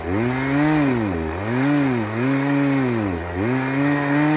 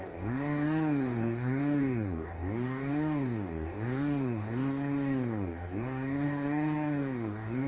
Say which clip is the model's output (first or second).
second